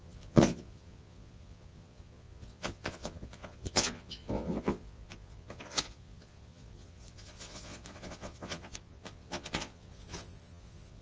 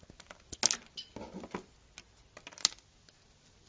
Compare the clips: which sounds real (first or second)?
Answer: second